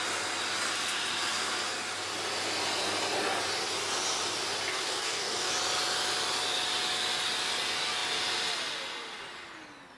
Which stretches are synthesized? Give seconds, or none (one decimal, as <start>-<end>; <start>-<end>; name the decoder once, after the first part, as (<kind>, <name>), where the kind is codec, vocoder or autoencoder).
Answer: 4.7-5.5 (codec, DAC)